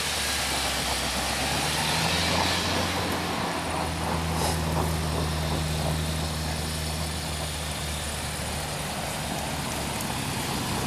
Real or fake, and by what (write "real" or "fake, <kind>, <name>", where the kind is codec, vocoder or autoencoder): real